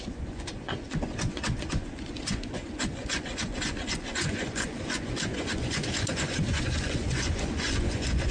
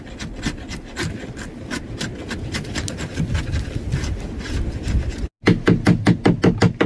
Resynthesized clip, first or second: first